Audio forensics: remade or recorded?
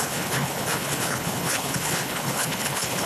remade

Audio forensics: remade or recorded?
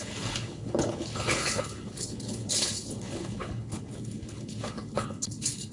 remade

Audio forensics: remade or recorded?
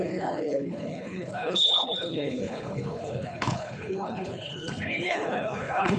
remade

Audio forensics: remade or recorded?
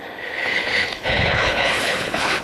remade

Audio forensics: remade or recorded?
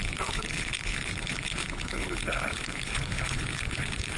remade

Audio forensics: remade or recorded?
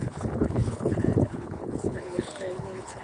remade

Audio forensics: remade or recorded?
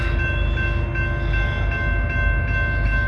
recorded